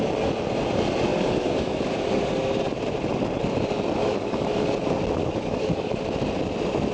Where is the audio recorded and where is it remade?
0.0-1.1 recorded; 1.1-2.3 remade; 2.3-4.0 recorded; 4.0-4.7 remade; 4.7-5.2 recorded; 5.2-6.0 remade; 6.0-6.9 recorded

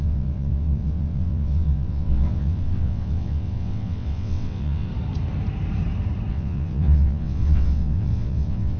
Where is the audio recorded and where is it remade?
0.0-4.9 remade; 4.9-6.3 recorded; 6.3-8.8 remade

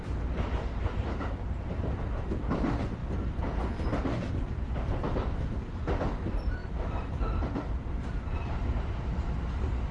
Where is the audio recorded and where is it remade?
0.0-3.0 remade; 3.0-4.3 recorded; 4.3-9.9 remade

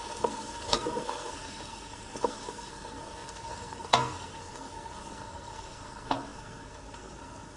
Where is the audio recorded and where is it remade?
0.0-7.6 remade

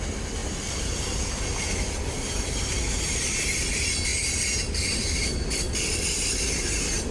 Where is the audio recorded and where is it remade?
0.0-0.4 remade; 0.4-2.9 recorded; 2.9-4.1 remade; 4.1-4.8 recorded; 4.8-7.1 remade